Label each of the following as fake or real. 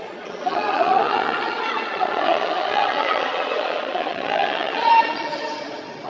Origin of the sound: fake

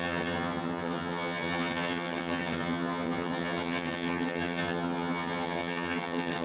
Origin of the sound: fake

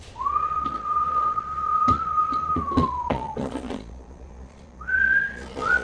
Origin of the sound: fake